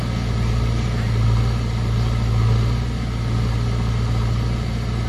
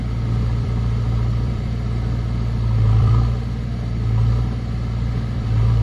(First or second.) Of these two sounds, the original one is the first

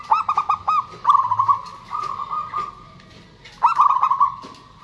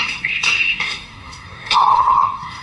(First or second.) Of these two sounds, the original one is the first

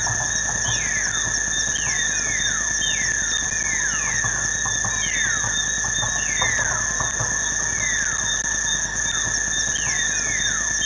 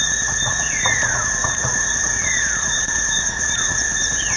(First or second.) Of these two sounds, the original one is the first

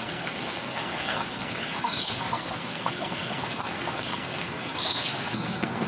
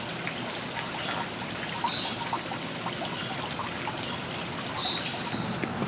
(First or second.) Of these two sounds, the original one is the second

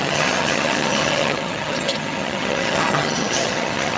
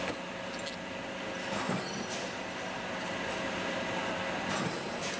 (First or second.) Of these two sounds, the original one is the second